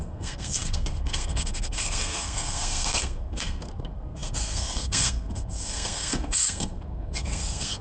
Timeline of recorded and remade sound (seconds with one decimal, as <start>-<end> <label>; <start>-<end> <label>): 0.0-7.8 remade